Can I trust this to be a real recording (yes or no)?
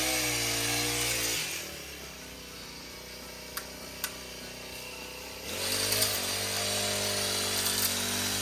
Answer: yes